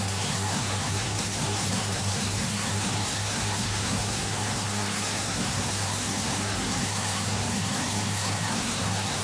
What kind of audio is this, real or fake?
fake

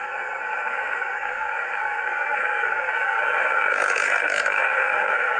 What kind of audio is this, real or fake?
fake